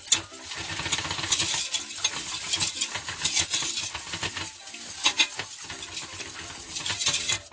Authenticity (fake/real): real